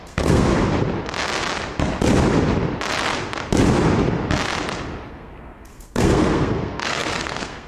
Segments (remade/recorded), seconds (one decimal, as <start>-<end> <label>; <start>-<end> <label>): 0.0-0.5 remade; 0.5-5.1 recorded; 5.1-7.7 remade

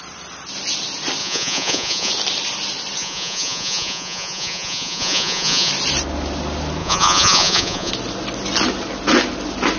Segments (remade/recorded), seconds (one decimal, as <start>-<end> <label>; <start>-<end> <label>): 0.0-1.2 recorded; 1.2-2.1 remade; 2.1-3.0 recorded; 3.0-5.7 remade; 5.7-6.8 recorded; 6.8-7.9 remade; 7.9-9.8 recorded

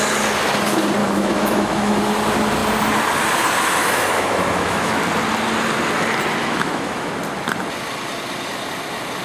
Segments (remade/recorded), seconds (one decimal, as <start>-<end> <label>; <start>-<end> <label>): 0.0-1.0 recorded; 1.0-2.0 remade; 2.0-3.8 recorded; 3.8-5.0 remade; 5.0-6.4 recorded; 6.4-7.1 remade; 7.1-9.2 recorded

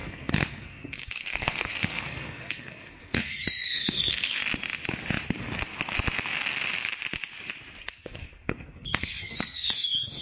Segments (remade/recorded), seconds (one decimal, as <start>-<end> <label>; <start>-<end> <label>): 0.0-4.4 remade; 4.4-7.8 recorded; 7.8-10.2 remade

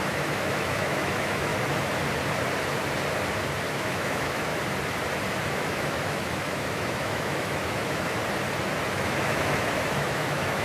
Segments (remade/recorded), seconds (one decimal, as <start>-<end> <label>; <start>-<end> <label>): 0.0-1.5 remade; 1.5-3.7 recorded; 3.7-4.5 remade; 4.5-5.5 recorded; 5.5-8.2 remade; 8.2-8.9 recorded; 8.9-10.6 remade

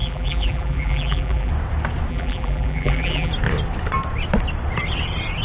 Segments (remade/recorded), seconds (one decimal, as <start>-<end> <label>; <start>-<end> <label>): 0.0-1.5 remade; 1.5-2.1 recorded; 2.1-3.3 remade; 3.3-5.4 recorded

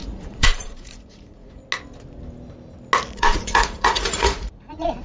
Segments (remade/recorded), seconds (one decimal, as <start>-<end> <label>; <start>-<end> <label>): 0.0-1.6 remade; 1.6-3.1 recorded; 3.1-5.0 remade

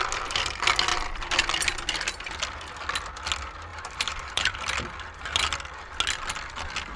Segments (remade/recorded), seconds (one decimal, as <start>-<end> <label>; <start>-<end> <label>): 0.0-3.7 recorded; 3.7-4.7 remade; 4.7-7.0 recorded